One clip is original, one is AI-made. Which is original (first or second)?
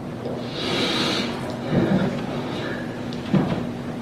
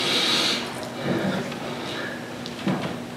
second